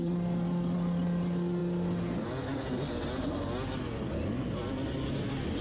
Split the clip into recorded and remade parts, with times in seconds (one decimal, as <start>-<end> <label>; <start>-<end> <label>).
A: 0.0-5.6 recorded